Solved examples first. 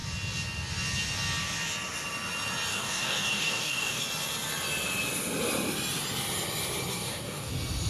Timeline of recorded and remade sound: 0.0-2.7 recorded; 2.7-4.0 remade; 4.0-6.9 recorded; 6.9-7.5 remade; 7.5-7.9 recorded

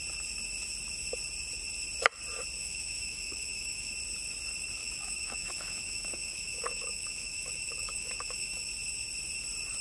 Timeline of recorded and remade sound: 0.0-2.6 recorded; 2.6-3.9 remade; 3.9-4.8 recorded; 4.8-8.7 remade; 8.7-9.8 recorded

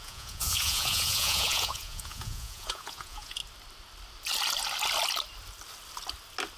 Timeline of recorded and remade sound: 0.0-3.4 remade; 3.4-6.6 recorded

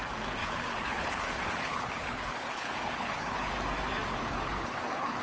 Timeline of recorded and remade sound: 0.0-0.4 recorded; 0.4-3.5 remade; 3.5-4.1 recorded; 4.1-5.2 remade